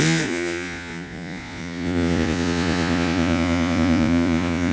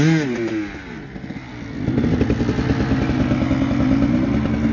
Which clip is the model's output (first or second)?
first